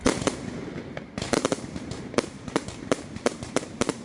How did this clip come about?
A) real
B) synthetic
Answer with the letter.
B